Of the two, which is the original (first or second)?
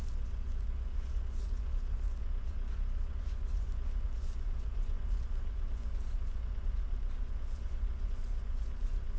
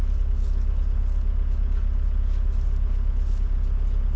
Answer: second